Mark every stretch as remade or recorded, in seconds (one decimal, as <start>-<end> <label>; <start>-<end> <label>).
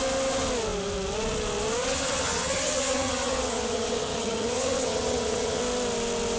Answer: 0.0-1.8 recorded; 1.8-5.6 remade; 5.6-6.4 recorded